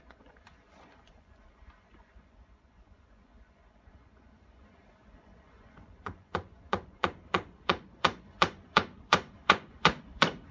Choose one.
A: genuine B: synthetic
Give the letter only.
B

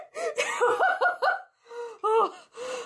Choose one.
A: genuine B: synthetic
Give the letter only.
A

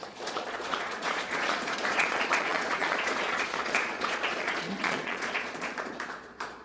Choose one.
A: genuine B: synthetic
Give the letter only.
B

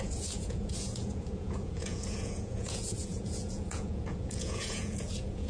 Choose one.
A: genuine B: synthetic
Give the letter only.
B